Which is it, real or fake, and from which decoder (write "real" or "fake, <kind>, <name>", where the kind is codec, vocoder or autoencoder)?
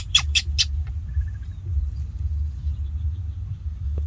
real